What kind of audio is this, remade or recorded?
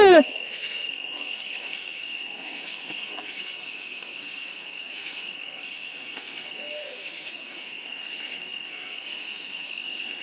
remade